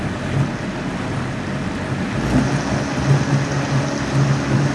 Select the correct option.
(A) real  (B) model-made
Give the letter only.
A